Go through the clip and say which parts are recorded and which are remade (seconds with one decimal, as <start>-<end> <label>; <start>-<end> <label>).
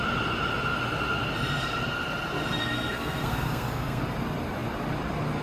0.0-2.6 recorded; 2.6-4.0 remade; 4.0-5.4 recorded